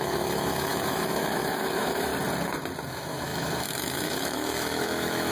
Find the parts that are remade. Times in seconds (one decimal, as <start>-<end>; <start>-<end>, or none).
0.0-2.1; 2.9-5.3